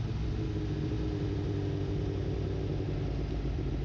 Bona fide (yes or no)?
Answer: yes